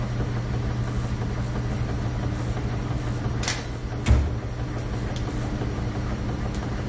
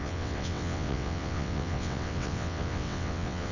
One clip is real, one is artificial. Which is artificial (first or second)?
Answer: second